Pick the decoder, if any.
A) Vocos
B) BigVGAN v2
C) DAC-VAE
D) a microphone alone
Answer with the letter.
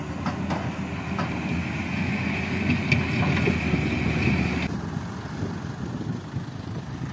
D